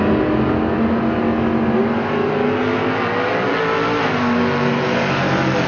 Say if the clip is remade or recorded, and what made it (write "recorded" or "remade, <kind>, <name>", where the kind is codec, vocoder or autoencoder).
recorded